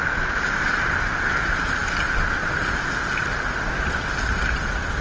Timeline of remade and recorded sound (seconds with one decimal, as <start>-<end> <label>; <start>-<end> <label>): 0.0-5.0 recorded